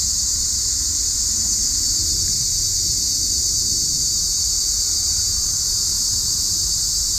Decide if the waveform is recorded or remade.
recorded